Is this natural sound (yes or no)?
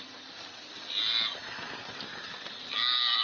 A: yes